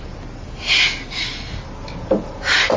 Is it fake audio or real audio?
real